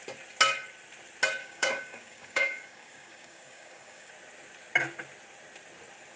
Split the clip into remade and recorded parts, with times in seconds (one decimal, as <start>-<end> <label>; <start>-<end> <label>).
0.0-1.4 recorded; 1.4-4.1 remade; 4.1-6.2 recorded